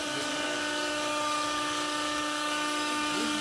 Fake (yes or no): yes